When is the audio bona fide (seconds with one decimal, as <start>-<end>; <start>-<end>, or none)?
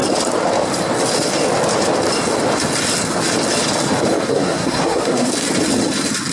0.0-4.3; 5.3-6.3